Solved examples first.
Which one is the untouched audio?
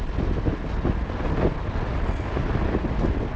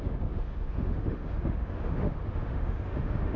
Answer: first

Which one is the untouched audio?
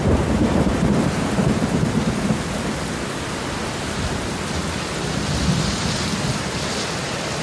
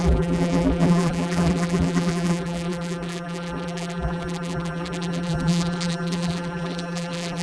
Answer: first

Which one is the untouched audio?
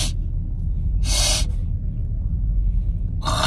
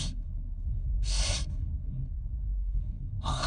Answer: first